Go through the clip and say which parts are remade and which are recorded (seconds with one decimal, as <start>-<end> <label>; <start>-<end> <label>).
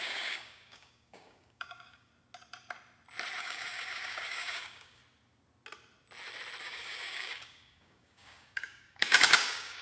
0.0-2.1 remade; 2.1-3.4 recorded; 3.4-5.0 remade; 5.0-6.6 recorded; 6.6-9.8 remade